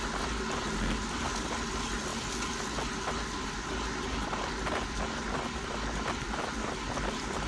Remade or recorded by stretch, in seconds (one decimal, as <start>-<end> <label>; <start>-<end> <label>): 0.0-7.5 recorded